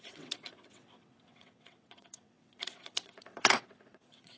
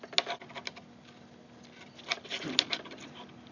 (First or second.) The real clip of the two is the second